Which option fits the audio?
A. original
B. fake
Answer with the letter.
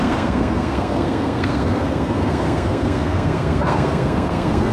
B